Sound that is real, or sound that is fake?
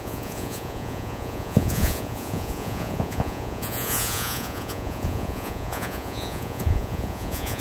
fake